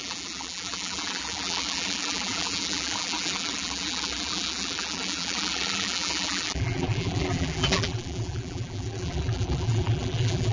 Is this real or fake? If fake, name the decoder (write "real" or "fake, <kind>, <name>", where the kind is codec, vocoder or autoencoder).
fake, vocoder, BigVGAN v2